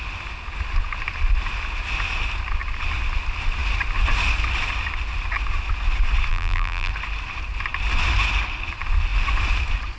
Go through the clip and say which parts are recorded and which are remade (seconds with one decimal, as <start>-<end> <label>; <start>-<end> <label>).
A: 0.0-6.3 recorded; 6.3-6.9 remade; 6.9-10.0 recorded